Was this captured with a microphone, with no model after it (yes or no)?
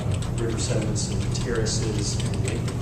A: yes